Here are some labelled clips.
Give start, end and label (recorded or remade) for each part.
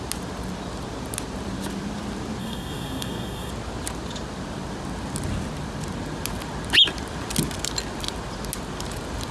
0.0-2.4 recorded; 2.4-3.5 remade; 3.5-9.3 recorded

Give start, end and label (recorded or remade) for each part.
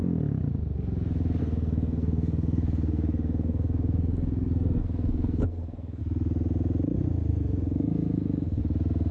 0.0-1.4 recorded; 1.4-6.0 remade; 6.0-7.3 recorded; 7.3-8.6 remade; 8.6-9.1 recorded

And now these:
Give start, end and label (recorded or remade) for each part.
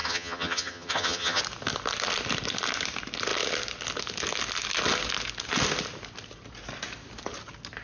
0.0-1.4 remade; 1.4-7.8 recorded